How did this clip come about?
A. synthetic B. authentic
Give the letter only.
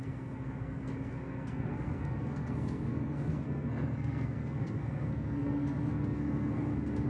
A